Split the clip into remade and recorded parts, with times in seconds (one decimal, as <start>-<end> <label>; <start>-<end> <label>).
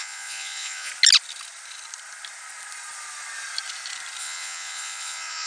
0.0-0.9 remade; 0.9-4.2 recorded; 4.2-5.5 remade